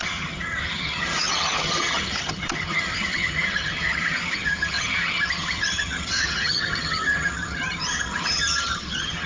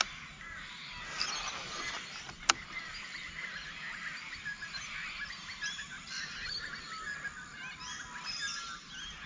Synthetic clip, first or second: first